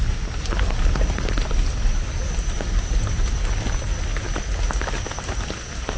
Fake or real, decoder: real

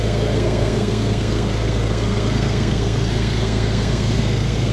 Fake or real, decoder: fake, codec, SNAC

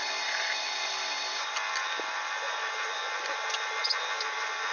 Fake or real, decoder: real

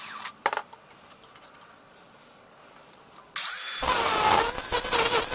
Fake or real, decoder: real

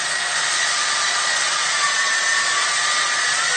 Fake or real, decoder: fake, vocoder, Vocos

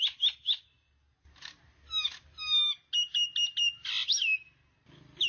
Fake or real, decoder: real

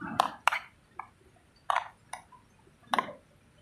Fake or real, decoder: real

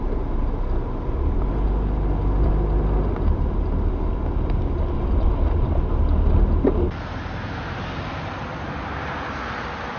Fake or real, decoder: real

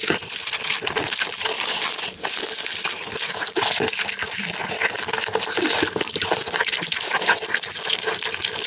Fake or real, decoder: real